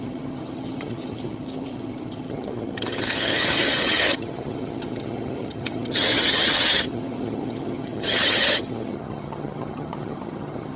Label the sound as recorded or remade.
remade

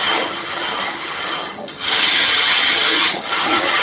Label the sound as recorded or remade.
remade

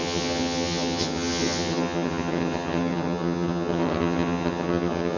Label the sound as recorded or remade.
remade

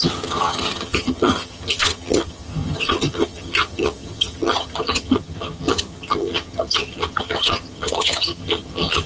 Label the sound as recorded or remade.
remade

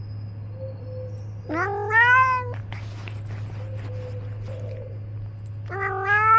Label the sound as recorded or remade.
recorded